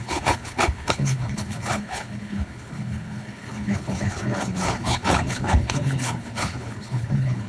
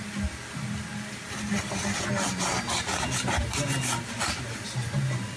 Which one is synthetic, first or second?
first